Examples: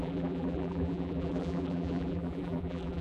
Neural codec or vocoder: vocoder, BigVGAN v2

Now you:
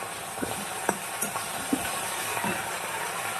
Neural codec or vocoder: vocoder, BigVGAN v2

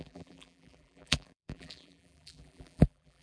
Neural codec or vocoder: vocoder, BigVGAN v2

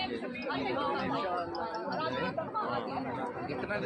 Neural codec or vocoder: none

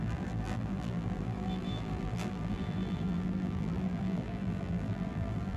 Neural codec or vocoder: vocoder, BigVGAN v2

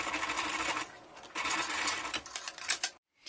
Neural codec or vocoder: none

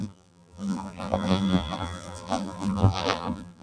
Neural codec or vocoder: vocoder, BigVGAN v2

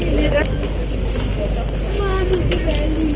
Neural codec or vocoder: none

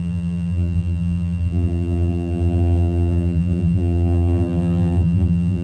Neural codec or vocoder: vocoder, BigVGAN v2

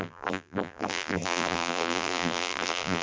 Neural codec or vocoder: vocoder, BigVGAN v2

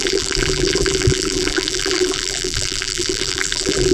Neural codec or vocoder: vocoder, BigVGAN v2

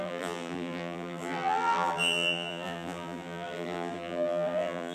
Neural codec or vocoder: vocoder, BigVGAN v2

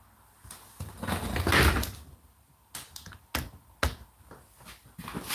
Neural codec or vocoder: none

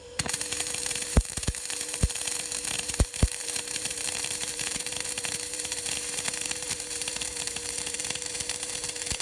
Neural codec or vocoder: vocoder, BigVGAN v2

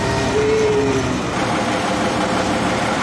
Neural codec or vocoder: vocoder, BigVGAN v2